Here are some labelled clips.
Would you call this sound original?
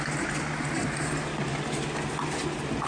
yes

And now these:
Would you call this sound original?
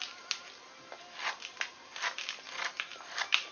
yes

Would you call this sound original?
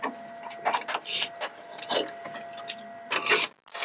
yes